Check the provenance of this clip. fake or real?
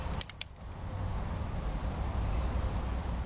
real